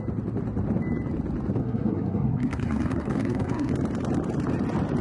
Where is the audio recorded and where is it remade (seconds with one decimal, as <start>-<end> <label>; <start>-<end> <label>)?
0.0-1.6 recorded; 1.6-3.7 remade; 3.7-5.0 recorded